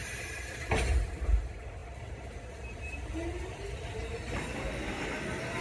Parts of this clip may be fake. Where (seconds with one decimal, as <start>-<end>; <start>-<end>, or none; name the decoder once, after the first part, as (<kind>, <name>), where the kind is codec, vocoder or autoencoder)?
none